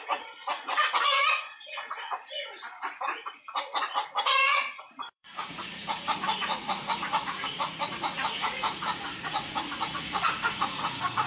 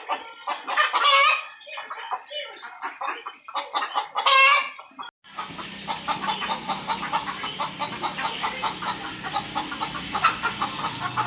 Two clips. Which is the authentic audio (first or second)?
second